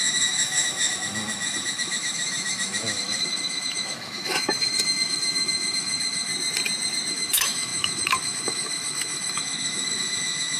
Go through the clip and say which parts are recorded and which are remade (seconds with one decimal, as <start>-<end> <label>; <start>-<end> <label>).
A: 0.0-6.3 remade; 6.3-7.1 recorded; 7.1-10.6 remade